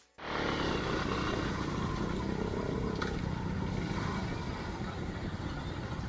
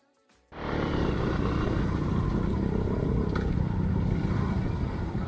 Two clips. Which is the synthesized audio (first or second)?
second